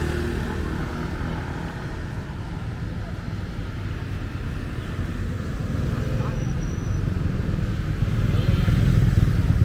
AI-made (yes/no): no